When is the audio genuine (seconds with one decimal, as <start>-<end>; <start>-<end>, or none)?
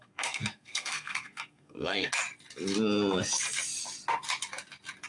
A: 2.1-5.1